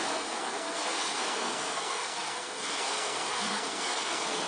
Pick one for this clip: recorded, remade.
remade